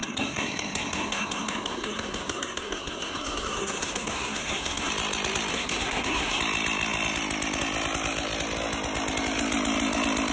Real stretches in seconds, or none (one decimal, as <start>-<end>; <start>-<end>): 4.9-5.5; 6.4-10.3